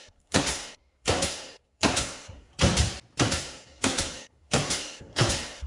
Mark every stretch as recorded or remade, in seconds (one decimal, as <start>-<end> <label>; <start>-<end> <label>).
0.0-2.5 remade; 2.5-3.3 recorded; 3.3-5.7 remade